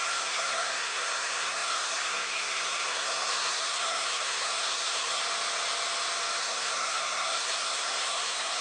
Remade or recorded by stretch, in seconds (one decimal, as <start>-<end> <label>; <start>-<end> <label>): 0.0-5.2 remade; 5.2-6.4 recorded; 6.4-8.6 remade